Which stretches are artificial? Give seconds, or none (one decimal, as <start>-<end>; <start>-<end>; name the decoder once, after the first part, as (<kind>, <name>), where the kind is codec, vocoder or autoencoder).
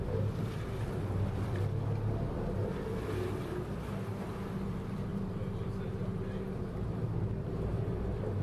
5.1-6.6 (vocoder, BigVGAN v2)